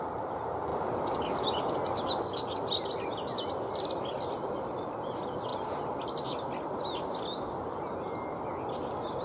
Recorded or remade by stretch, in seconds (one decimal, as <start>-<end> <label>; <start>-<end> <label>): 0.0-9.2 recorded